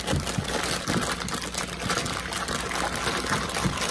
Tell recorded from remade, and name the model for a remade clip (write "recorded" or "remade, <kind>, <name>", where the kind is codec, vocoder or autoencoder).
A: recorded